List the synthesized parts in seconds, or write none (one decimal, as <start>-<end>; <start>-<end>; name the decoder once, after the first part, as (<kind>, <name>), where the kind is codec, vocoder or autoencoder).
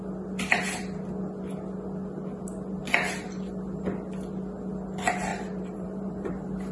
5.3-6.3 (vocoder, BigVGAN v2)